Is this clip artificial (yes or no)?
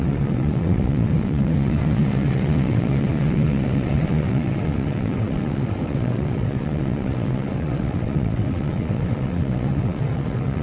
yes